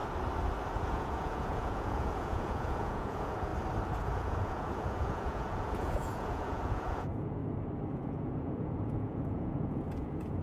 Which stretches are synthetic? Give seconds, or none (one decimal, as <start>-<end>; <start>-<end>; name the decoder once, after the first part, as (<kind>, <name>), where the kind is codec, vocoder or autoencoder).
0.7-3.5 (vocoder, Vocos); 4.0-7.4; 7.9-10.4